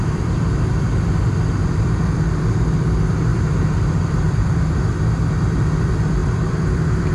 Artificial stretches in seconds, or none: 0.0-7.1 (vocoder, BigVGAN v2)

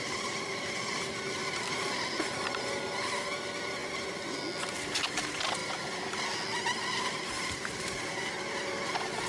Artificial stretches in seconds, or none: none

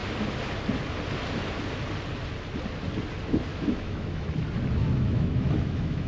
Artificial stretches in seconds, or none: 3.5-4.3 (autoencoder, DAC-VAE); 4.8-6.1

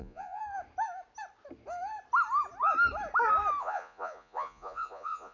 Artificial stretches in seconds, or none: 0.0-0.4 (vocoder, Vocos); 3.6-5.3

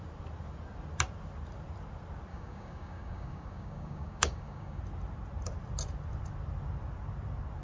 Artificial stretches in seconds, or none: 2.3-4.8 (codec, DAC)

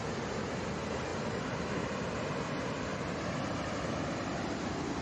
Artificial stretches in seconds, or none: none

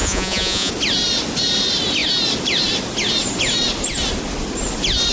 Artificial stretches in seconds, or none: 0.0-0.7 (vocoder, Vocos)

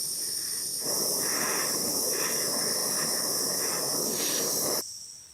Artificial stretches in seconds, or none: none